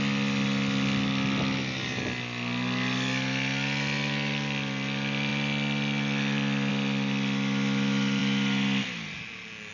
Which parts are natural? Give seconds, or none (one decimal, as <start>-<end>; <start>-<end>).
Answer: 0.0-9.7